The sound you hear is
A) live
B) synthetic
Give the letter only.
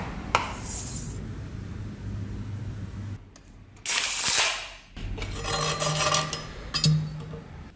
A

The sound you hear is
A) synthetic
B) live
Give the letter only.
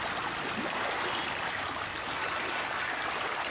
B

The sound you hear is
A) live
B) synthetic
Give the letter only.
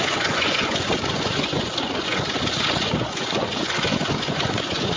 B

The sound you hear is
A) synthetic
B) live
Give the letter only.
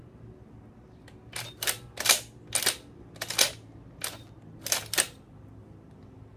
B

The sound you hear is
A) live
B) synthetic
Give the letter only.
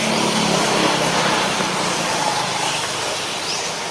A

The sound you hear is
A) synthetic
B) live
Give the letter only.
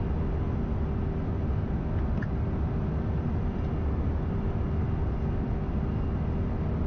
B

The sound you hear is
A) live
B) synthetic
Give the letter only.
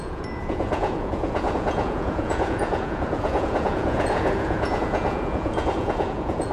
B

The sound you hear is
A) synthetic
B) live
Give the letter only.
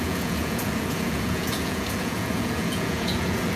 A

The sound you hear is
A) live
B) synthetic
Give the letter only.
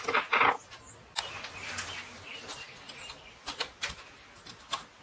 A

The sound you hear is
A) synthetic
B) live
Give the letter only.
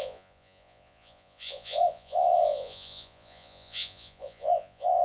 A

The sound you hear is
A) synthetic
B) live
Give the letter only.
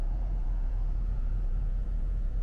A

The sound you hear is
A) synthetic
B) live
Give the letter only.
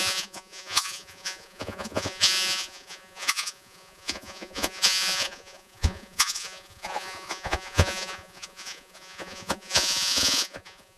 A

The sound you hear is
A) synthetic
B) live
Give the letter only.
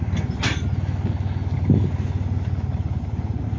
B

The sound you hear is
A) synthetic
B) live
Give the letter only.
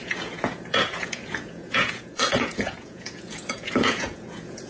A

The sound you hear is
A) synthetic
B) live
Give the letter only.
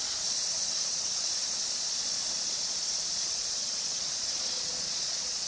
A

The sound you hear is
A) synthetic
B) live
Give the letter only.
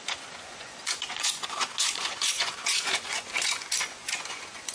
A